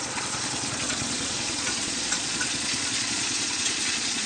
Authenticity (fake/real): fake